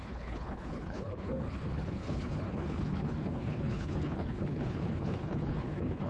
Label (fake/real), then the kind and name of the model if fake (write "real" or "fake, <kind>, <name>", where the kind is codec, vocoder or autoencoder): fake, codec, HILCodec